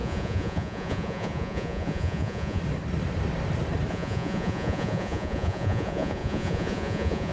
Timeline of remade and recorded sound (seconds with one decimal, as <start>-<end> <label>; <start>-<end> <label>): 0.0-2.6 remade; 2.6-3.9 recorded; 3.9-7.3 remade